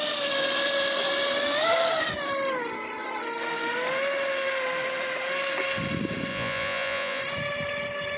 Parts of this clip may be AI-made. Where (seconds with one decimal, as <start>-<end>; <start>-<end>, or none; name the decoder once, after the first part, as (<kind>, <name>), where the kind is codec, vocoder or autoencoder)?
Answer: 6.3-7.2 (vocoder, Vocos)